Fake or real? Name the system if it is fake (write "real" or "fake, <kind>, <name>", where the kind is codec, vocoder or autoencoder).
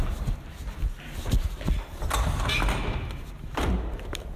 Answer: real